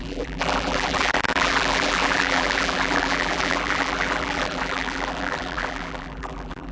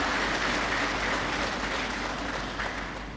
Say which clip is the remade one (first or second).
first